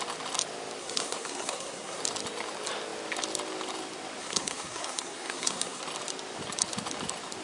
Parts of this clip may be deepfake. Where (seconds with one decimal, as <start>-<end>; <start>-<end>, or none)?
0.8-2.0; 4.2-5.8